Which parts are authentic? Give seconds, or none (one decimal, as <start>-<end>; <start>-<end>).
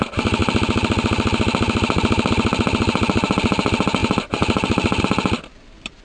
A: 0.0-4.0; 5.0-6.0